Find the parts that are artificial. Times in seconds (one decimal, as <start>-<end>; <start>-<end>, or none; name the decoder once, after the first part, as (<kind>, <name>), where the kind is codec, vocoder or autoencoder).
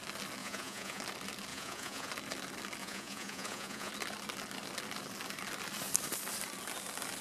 0.4-1.0 (vocoder, Vocos); 1.5-2.1; 2.8-3.9